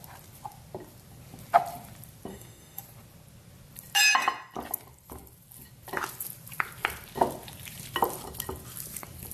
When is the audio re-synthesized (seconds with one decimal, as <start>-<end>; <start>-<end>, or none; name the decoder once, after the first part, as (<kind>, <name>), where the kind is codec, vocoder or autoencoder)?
2.3-2.8 (autoencoder, DAC-VAE)